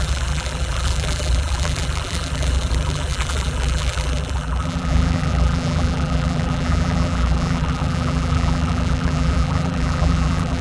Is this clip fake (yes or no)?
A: yes